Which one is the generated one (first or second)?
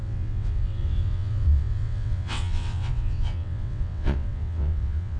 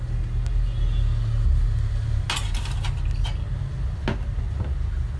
first